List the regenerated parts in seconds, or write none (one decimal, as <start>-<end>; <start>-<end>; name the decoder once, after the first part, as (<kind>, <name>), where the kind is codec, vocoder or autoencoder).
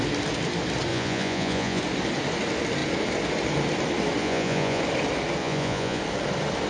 0.9-1.8 (vocoder, Vocos); 4.2-4.8; 5.4-6.0